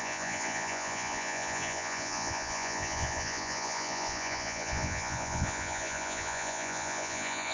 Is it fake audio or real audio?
fake